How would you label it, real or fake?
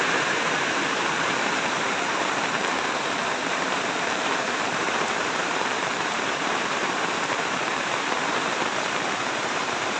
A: fake